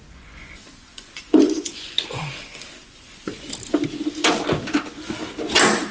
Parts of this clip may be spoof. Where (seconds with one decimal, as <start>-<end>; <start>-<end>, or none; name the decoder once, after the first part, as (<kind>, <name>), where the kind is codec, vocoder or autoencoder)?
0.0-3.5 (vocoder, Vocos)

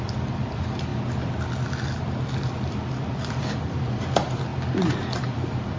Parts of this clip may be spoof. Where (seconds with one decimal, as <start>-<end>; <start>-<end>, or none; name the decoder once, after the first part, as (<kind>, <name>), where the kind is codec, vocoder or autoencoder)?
none

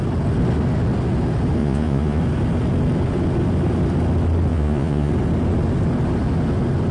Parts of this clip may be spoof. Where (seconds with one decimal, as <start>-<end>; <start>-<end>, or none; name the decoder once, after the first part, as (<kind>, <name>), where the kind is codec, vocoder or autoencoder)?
1.6-2.2 (vocoder, Vocos); 4.5-5.1

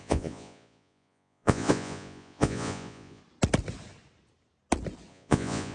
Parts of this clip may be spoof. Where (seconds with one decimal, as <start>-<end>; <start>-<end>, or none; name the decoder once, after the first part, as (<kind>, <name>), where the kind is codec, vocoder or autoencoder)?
0.0-3.2 (vocoder, Vocos); 5.1-5.7

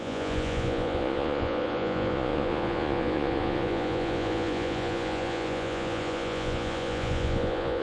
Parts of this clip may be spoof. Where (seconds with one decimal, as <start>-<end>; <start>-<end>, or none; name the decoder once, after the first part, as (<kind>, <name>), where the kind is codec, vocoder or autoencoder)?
0.0-7.8 (vocoder, Vocos)

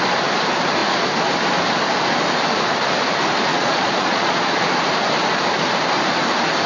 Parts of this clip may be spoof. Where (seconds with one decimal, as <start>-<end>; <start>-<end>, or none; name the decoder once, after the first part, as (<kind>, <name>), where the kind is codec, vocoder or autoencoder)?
3.5-4.7 (vocoder, Vocos)

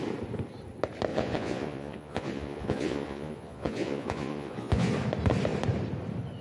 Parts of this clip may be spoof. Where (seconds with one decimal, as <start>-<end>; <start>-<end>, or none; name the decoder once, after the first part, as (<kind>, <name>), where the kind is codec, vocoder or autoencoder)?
1.1-4.9 (vocoder, Vocos)